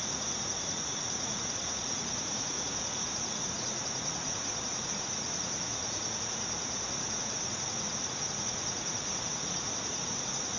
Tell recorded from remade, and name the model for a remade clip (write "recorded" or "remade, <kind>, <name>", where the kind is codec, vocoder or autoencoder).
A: remade, vocoder, Vocos